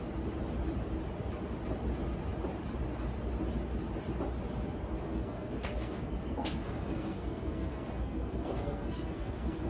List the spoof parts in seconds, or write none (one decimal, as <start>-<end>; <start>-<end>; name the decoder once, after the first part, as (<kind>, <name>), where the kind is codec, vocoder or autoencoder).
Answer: 5.0-9.7 (codec, SNAC)